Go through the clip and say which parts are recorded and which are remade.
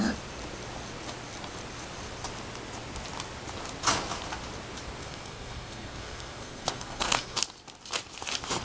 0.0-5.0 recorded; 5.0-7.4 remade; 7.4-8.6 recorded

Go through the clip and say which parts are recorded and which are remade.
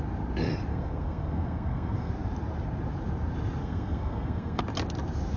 0.0-0.7 recorded; 0.7-2.1 remade; 2.1-3.6 recorded; 3.6-4.6 remade; 4.6-5.4 recorded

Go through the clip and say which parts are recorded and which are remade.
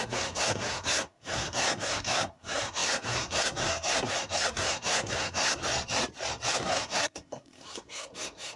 0.0-5.6 remade; 5.6-6.5 recorded; 6.5-8.6 remade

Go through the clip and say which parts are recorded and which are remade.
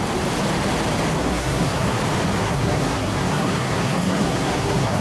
0.0-1.2 recorded; 1.2-2.0 remade; 2.0-2.4 recorded; 2.4-5.0 remade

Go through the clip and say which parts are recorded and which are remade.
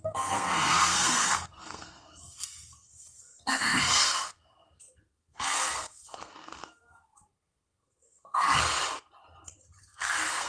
0.0-8.8 remade; 8.8-9.8 recorded; 9.8-10.5 remade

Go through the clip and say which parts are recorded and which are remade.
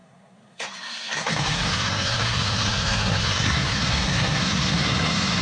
0.0-5.4 remade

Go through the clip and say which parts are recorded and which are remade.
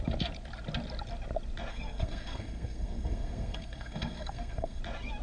0.0-1.7 recorded; 1.7-4.8 remade; 4.8-5.2 recorded